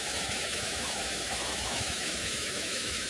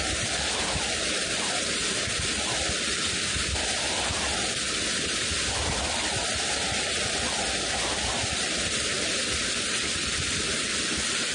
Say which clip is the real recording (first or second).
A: second